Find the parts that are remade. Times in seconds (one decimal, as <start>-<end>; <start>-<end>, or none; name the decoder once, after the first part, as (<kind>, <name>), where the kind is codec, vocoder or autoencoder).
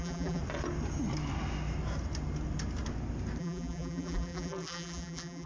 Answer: 0.0-0.4 (vocoder, BigVGAN v2); 3.4-5.5